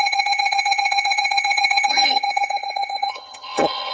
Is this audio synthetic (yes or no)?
yes